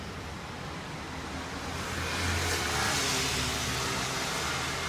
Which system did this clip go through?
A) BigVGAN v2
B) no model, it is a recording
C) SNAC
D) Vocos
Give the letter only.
B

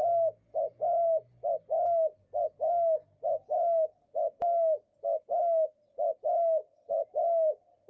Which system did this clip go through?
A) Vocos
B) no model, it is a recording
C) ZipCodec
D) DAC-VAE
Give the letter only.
B